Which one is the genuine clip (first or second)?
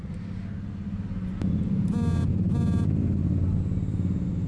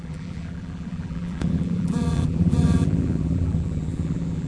first